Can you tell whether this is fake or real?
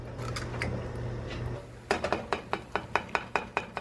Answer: real